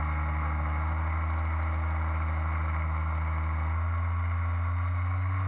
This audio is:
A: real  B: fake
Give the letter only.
A